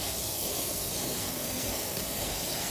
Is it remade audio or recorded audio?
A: remade